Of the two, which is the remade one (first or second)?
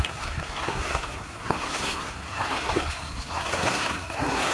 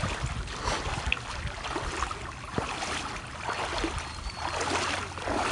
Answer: first